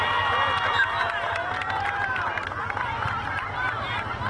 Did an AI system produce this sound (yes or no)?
no